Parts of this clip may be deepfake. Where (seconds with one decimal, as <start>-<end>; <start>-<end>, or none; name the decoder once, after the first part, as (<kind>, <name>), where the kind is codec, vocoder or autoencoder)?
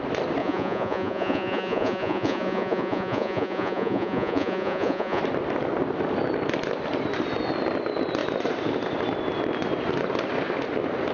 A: 0.4-5.2 (vocoder, Vocos)